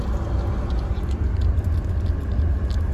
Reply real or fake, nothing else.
real